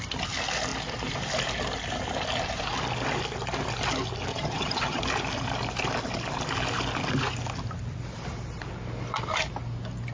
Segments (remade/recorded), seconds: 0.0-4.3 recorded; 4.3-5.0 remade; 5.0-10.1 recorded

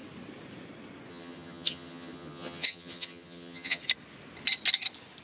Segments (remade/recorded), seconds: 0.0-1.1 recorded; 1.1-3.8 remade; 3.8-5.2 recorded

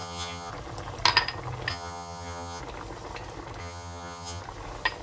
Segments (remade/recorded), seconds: 0.0-0.5 remade; 0.5-1.7 recorded; 1.7-2.6 remade; 2.6-3.6 recorded; 3.6-4.4 remade; 4.4-5.0 recorded